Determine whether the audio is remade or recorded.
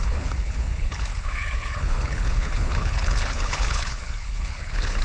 remade